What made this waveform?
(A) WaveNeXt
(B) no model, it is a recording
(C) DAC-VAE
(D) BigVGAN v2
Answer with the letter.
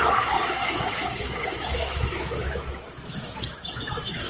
C